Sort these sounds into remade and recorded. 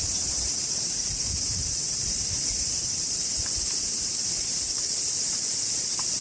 remade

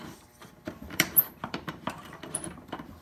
remade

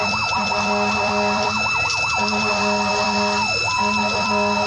remade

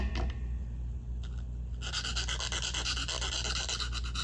recorded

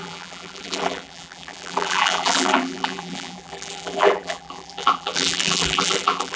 remade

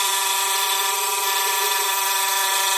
remade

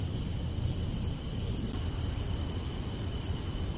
remade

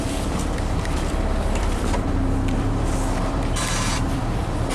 remade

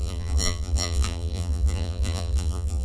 remade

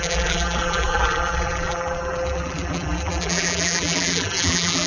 remade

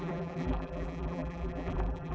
remade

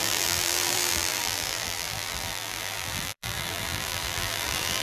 remade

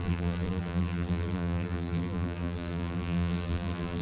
remade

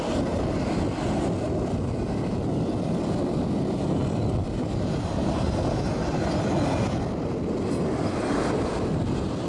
recorded